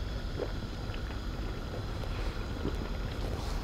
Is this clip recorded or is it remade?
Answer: recorded